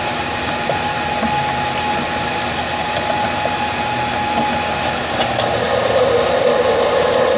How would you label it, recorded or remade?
recorded